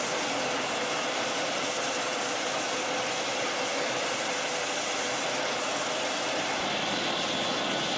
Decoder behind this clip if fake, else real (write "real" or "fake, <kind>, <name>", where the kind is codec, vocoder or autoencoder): real